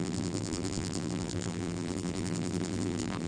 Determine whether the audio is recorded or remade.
remade